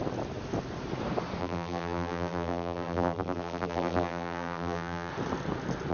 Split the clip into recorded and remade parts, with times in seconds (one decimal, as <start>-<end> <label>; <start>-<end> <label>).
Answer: 0.0-1.4 recorded; 1.4-5.1 remade; 5.1-5.9 recorded